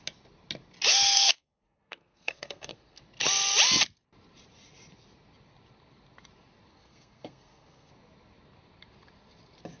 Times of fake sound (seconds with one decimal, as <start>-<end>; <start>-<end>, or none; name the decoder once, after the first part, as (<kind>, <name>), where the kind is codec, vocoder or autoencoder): 0.9-3.0 (codec, SNAC); 6.7-7.9